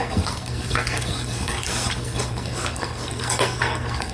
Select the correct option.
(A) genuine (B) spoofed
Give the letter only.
B